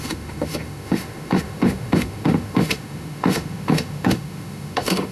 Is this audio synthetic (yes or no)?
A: yes